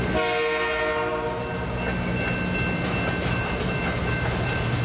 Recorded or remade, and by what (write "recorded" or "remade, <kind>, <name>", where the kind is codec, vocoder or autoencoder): recorded